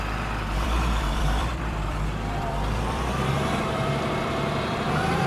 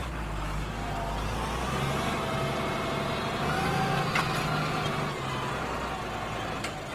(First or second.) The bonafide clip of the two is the second